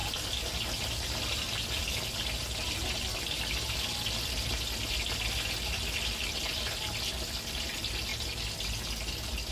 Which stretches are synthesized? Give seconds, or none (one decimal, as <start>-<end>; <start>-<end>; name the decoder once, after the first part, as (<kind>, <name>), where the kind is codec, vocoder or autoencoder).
1.8-4.8 (vocoder, BigVGAN v2)